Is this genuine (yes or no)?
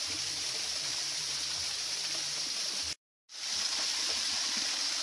no